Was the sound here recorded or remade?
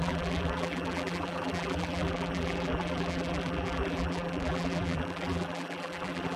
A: remade